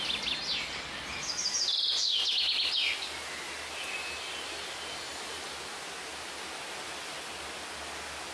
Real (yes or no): yes